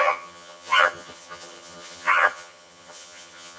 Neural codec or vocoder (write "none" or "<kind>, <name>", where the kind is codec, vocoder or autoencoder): vocoder, HiFi-GAN